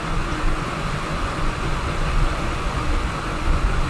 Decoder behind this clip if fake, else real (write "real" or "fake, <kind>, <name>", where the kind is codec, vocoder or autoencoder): fake, vocoder, Vocos